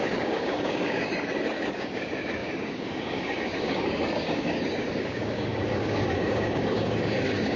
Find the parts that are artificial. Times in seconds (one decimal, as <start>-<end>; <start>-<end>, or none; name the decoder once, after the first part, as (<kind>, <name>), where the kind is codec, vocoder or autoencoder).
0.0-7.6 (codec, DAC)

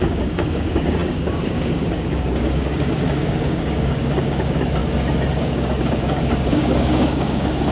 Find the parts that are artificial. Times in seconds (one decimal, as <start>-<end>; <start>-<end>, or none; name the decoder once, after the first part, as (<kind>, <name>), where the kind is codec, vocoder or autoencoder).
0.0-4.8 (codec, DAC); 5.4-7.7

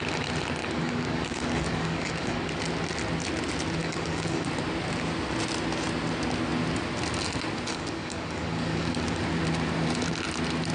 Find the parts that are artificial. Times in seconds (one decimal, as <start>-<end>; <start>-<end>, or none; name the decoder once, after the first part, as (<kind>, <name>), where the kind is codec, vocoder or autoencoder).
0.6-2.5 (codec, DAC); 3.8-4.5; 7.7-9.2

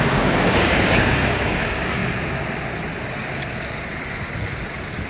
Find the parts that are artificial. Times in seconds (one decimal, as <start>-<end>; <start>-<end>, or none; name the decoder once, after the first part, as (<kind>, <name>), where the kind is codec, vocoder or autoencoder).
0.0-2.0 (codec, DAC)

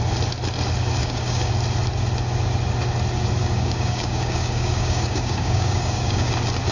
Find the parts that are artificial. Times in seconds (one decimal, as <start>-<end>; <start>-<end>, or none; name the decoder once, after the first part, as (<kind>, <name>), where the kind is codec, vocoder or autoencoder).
1.0-1.5 (codec, DAC); 3.4-6.3

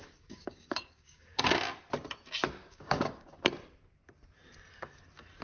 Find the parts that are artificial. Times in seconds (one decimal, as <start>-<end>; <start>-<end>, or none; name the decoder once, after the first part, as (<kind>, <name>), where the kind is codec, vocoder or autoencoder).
0.0-1.4 (codec, DAC); 2.6-3.5